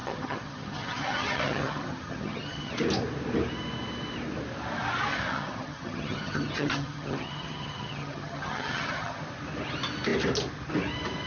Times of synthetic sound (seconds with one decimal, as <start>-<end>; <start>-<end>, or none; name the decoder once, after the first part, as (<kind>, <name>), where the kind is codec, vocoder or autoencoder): 0.0-2.7 (vocoder, HiFi-GAN); 5.1-9.2